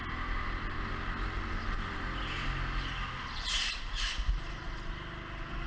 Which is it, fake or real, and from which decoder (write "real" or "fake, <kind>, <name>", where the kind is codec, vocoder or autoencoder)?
real